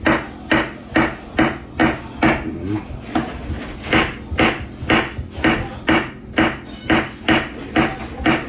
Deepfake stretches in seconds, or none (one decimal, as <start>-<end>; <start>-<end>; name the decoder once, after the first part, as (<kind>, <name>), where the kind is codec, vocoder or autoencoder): none